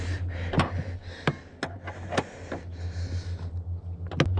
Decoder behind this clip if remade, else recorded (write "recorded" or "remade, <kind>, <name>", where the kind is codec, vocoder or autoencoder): recorded